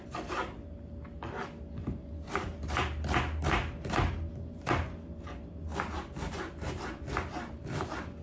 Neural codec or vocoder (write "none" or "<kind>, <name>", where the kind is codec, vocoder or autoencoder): none